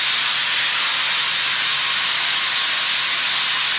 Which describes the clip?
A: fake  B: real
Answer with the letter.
B